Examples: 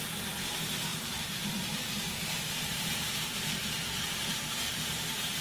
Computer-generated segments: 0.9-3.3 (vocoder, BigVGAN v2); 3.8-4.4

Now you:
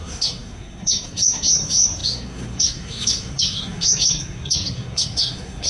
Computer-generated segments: 0.0-5.7 (codec, SNAC)